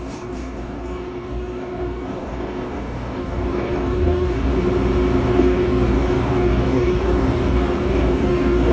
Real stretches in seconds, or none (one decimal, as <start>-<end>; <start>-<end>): 4.5-5.3